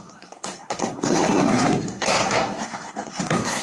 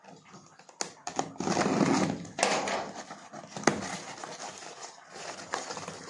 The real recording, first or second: second